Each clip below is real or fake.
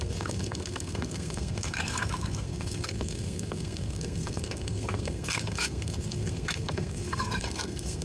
fake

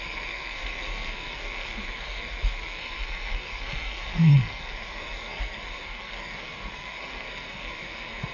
fake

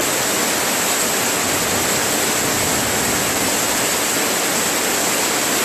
real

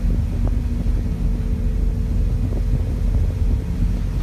real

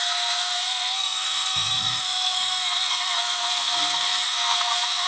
fake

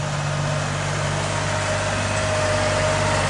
real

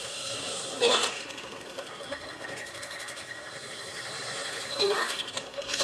fake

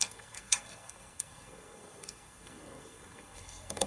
fake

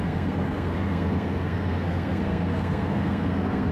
fake